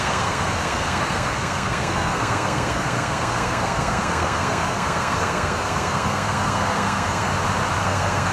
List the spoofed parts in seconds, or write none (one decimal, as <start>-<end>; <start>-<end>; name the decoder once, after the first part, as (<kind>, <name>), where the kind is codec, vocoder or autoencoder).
0.0-7.3 (codec, SNAC); 7.8-8.3